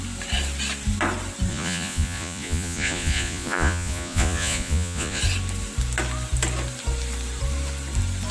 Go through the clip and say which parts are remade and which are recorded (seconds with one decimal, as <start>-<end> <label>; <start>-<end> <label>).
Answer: 0.0-1.5 recorded; 1.5-5.2 remade; 5.2-8.3 recorded